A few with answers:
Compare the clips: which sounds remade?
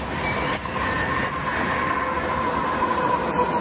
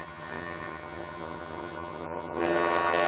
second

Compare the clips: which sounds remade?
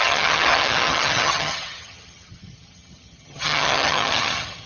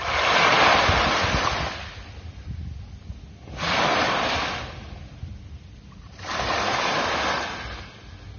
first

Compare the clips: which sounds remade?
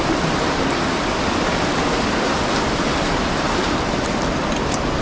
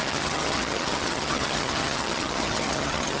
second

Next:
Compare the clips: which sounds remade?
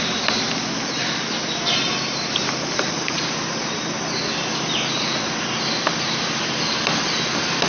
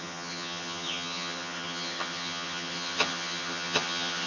second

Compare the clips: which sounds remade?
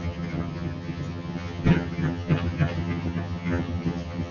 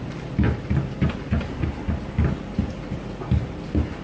first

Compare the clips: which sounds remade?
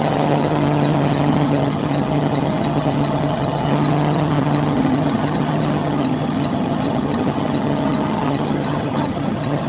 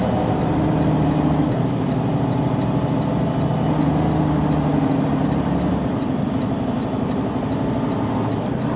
first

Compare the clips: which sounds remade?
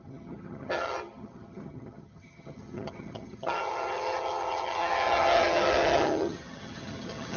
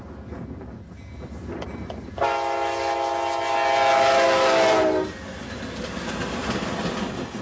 first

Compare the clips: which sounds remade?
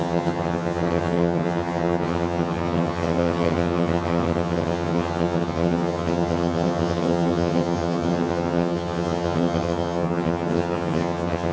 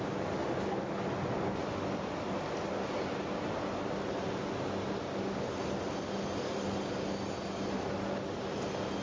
first